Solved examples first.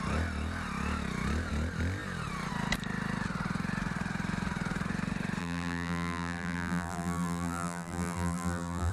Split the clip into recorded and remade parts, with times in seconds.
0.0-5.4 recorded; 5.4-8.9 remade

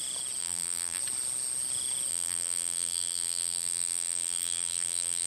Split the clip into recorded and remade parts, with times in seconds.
0.0-0.4 recorded; 0.4-1.0 remade; 1.0-2.1 recorded; 2.1-5.3 remade

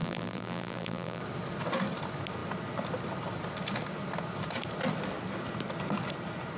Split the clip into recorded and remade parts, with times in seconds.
0.0-1.2 remade; 1.2-6.6 recorded

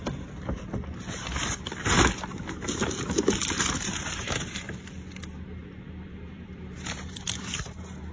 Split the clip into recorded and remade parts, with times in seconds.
0.0-3.4 recorded; 3.4-4.8 remade; 4.8-5.6 recorded; 5.6-7.6 remade; 7.6-8.1 recorded

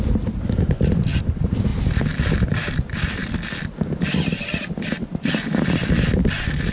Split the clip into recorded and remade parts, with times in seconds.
0.0-6.7 recorded